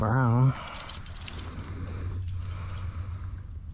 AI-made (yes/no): no